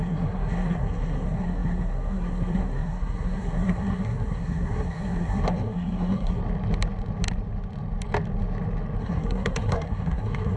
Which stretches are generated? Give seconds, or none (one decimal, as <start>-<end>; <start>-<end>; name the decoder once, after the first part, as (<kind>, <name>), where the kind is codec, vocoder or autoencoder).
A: 0.0-6.4 (codec, SNAC); 9.0-10.6